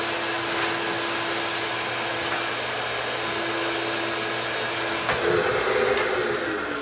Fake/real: real